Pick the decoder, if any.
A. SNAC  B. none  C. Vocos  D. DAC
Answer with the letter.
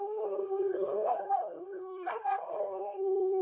A